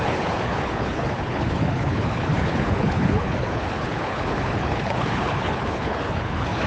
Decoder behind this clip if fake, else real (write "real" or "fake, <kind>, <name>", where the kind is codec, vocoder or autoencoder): fake, codec, HILCodec